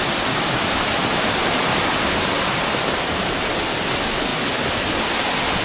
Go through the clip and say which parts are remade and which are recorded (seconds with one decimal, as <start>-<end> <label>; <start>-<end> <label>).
0.0-5.6 recorded